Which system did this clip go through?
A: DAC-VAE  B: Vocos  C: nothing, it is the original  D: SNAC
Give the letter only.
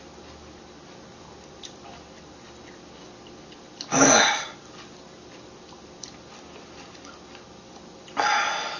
C